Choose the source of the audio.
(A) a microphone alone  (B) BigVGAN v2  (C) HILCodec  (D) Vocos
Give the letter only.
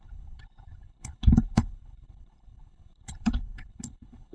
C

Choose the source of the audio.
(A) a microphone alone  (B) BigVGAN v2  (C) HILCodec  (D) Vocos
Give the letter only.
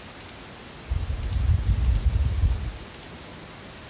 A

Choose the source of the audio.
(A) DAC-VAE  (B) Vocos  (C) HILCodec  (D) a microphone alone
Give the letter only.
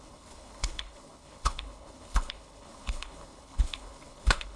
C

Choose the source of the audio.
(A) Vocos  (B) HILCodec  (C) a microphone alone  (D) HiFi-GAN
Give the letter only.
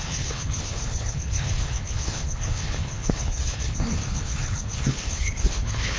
B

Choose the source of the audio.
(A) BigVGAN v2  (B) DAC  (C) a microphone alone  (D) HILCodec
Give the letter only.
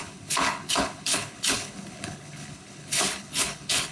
D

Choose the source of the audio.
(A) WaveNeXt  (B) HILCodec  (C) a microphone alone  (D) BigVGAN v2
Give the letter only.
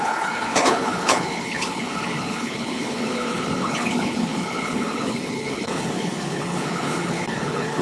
B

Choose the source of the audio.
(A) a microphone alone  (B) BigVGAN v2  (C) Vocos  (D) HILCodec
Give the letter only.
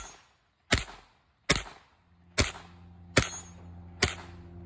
A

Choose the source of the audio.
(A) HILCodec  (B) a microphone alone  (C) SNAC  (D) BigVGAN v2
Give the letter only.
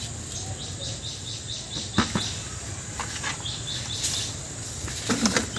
B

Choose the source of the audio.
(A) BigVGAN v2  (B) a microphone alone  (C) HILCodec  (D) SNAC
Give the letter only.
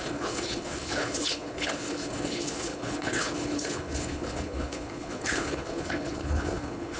C